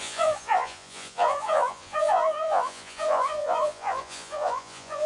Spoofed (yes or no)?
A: yes